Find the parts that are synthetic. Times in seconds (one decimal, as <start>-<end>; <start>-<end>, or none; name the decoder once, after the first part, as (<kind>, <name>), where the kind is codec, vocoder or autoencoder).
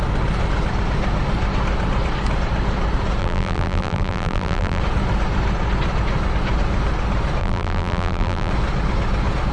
3.2-4.8 (vocoder, BigVGAN v2); 7.4-8.5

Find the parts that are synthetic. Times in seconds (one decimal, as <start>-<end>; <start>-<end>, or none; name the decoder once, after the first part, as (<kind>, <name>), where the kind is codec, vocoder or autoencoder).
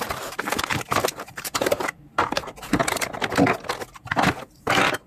0.0-2.8 (vocoder, BigVGAN v2); 4.4-5.1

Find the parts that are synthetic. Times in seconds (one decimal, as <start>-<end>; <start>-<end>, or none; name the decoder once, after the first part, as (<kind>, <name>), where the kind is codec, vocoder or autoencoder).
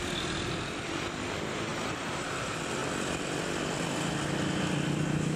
1.7-2.3 (vocoder, BigVGAN v2)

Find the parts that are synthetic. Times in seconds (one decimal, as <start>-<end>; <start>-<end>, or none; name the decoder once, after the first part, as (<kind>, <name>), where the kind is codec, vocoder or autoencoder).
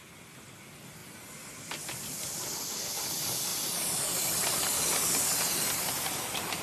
none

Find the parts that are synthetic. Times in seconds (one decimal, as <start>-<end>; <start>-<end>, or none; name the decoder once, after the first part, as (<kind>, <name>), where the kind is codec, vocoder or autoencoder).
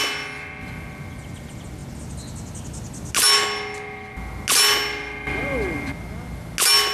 none